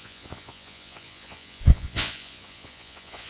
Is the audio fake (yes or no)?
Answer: yes